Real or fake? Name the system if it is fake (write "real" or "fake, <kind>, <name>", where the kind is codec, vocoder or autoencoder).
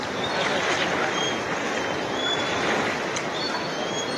real